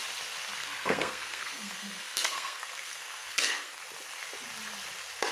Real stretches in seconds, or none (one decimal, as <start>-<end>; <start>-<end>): 0.0-0.6; 3.8-5.3